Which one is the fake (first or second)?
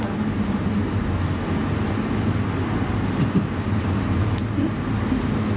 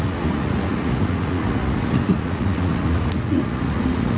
second